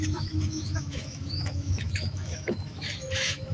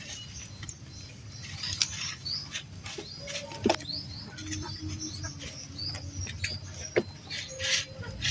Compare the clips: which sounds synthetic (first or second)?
first